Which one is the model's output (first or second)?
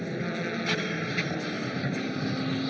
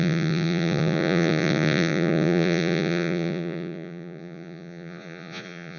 second